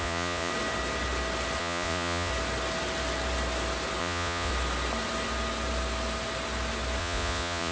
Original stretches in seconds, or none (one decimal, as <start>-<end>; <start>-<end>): 0.5-1.6; 2.3-4.0; 4.5-7.0